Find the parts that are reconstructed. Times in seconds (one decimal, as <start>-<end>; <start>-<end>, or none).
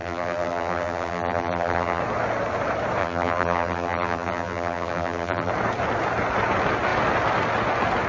0.0-2.0; 3.0-5.5